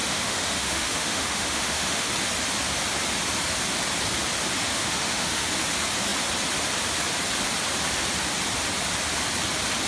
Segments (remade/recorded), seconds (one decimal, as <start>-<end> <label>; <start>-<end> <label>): 0.0-2.1 remade; 2.1-4.7 recorded; 4.7-5.5 remade; 5.5-9.9 recorded